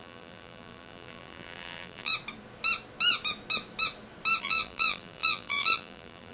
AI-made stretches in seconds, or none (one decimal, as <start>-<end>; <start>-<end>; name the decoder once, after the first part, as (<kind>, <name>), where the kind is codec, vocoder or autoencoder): 0.0-2.1 (vocoder, BigVGAN v2); 4.4-6.3